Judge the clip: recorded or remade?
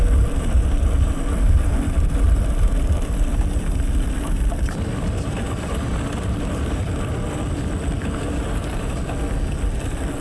recorded